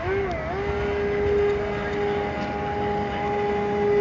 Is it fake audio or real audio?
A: real